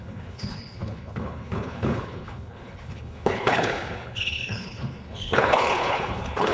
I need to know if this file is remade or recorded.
remade